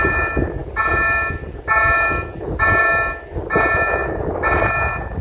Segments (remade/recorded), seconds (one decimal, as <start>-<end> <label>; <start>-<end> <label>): 0.0-5.2 recorded